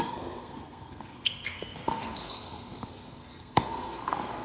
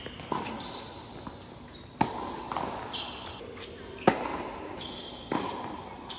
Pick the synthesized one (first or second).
first